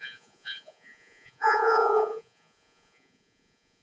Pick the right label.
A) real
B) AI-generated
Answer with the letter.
B